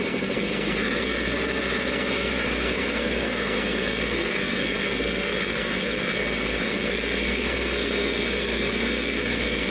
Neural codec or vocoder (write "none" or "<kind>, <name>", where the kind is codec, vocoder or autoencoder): codec, SNAC